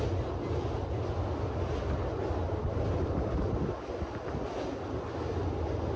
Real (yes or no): yes